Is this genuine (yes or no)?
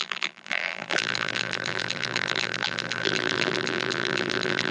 no